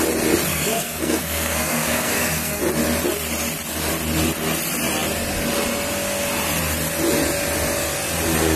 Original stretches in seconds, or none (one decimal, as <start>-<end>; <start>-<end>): 0.0-0.5; 2.6-8.6